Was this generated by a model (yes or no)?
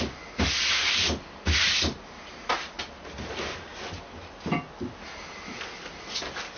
no